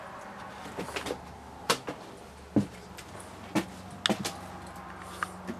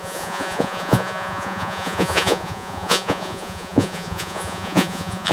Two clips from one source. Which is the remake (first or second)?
second